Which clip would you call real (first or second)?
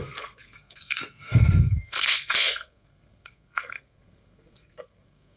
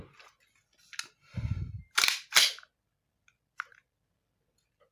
second